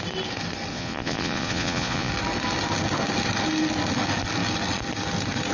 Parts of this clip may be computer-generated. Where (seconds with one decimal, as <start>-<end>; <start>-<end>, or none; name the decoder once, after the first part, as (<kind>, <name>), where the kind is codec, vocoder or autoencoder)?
0.7-2.1 (vocoder, Vocos)